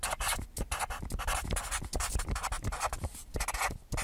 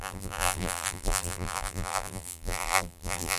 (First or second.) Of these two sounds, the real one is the first